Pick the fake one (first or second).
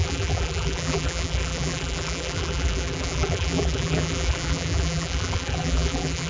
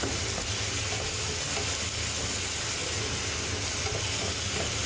first